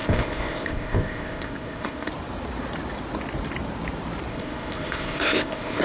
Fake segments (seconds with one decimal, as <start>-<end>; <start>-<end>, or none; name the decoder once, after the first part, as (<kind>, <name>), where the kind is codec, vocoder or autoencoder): 0.0-2.1 (codec, ZipCodec); 4.3-5.8